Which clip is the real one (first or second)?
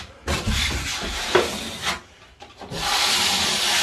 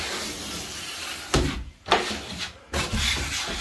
second